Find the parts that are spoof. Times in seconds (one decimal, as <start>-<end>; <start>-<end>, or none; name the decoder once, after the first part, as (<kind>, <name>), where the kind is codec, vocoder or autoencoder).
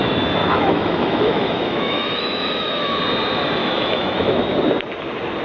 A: 0.4-3.0 (autoencoder, DAC-VAE); 3.6-4.6